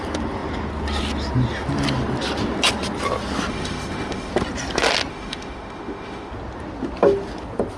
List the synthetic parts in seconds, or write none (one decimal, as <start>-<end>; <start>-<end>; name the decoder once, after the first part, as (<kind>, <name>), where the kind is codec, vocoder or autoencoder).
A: 3.5-4.3 (autoencoder, DAC-VAE); 5.1-6.3